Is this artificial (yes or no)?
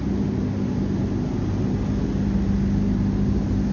no